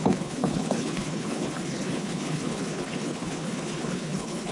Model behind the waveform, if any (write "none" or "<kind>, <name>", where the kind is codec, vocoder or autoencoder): codec, HILCodec